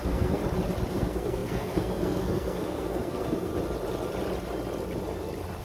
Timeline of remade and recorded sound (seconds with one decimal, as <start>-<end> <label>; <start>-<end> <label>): 0.0-0.4 remade; 0.4-0.9 recorded; 0.9-3.5 remade; 3.5-5.6 recorded